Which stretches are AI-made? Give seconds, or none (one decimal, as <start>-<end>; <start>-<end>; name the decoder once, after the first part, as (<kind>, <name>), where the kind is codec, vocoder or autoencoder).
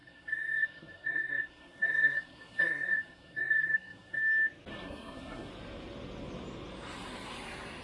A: 0.0-4.2 (codec, SNAC); 4.7-5.5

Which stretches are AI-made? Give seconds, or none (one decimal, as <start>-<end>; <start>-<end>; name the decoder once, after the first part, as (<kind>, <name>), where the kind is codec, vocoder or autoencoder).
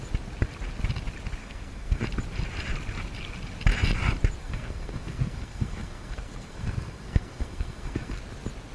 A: 1.4-2.0 (codec, SNAC); 4.4-8.2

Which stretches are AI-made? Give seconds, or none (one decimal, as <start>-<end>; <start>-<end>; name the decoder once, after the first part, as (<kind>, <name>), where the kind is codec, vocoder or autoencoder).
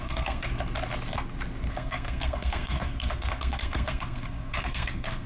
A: 0.0-0.5 (codec, SNAC); 1.7-5.3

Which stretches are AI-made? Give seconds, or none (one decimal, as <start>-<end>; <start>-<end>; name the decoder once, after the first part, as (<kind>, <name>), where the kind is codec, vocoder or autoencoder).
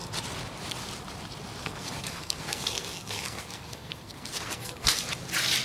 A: 1.6-5.0 (codec, SNAC)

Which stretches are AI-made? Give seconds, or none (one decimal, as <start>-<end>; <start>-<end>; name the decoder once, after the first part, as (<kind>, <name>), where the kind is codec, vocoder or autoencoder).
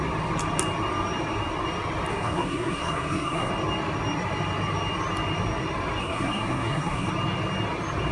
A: 2.1-3.5 (codec, SNAC); 6.0-7.1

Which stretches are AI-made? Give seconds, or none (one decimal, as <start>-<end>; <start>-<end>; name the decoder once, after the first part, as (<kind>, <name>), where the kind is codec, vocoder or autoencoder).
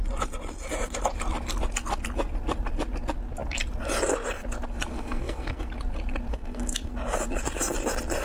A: 4.9-5.7 (codec, SNAC); 6.3-6.9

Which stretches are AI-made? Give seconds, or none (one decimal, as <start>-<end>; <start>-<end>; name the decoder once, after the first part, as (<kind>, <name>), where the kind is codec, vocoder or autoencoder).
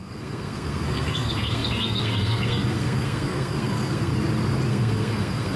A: 0.0-4.1 (codec, SNAC); 4.7-5.6